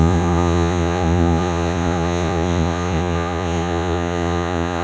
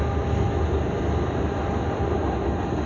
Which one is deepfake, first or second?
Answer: first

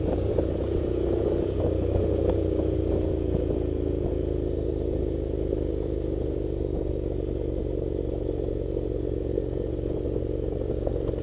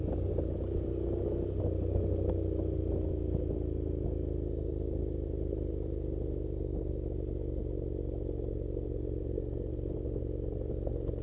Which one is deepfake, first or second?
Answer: first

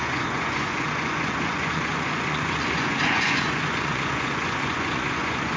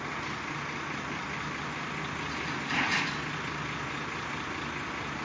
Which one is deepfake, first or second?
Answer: first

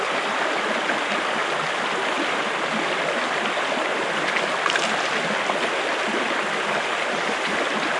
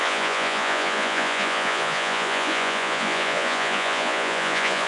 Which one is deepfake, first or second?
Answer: second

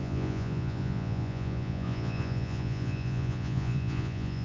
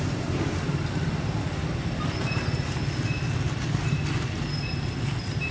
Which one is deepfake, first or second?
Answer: first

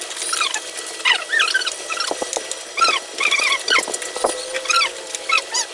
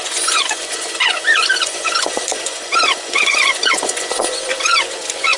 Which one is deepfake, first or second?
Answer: second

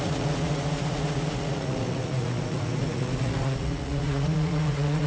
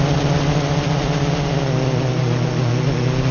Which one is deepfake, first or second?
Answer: first